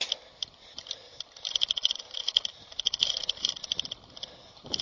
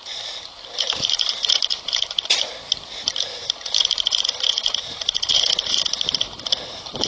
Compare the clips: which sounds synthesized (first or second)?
second